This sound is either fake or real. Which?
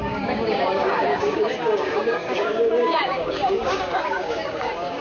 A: fake